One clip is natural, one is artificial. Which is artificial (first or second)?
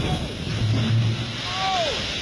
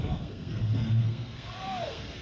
second